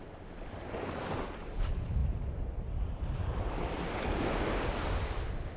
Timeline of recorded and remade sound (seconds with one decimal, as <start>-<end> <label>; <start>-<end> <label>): 0.0-2.0 remade; 2.0-3.5 recorded; 3.5-5.6 remade